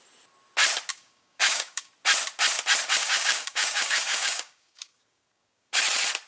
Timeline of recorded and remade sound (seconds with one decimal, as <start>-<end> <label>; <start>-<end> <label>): 0.0-0.9 recorded; 0.9-1.9 remade; 1.9-3.0 recorded; 3.0-5.8 remade; 5.8-6.3 recorded